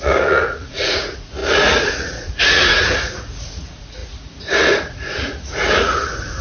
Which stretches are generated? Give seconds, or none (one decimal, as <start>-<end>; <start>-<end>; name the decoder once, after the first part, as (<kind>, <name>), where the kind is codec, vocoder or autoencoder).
0.0-6.4 (vocoder, Vocos)